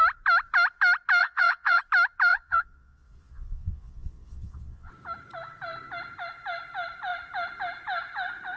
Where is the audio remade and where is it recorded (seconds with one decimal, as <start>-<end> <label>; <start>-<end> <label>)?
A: 0.0-1.2 recorded; 1.2-1.8 remade; 1.8-2.3 recorded; 2.3-4.9 remade; 4.9-8.6 recorded